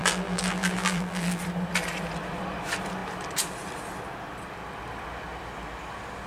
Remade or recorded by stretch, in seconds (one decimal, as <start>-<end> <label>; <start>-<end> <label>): 0.0-1.4 remade; 1.4-6.3 recorded